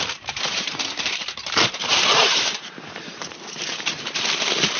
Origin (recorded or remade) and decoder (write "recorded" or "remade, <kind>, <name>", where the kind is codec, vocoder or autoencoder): remade, vocoder, BigVGAN v2